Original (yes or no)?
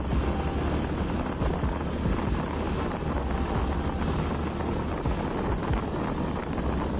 yes